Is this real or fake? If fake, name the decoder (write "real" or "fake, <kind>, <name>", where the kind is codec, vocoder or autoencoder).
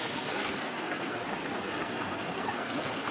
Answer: fake, codec, SNAC